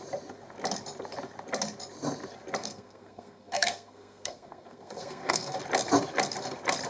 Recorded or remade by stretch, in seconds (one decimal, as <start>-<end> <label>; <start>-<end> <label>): 0.0-2.6 recorded; 2.6-5.6 remade; 5.6-6.9 recorded